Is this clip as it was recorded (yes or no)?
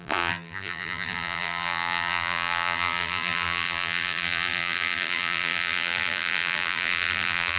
no